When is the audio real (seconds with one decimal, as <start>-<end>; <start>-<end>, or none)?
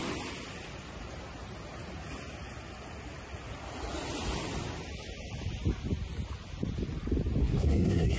0.0-7.4